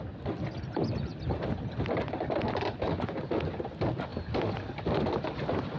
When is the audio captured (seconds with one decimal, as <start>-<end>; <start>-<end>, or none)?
0.0-4.1; 4.8-5.8